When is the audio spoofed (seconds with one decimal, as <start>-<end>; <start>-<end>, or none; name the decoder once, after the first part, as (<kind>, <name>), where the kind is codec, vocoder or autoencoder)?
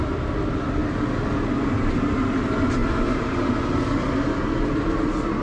none